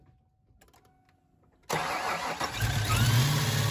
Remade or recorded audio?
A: recorded